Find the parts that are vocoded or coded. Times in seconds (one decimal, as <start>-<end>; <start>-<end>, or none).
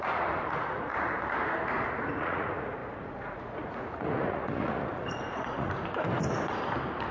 0.0-0.9; 1.7-5.8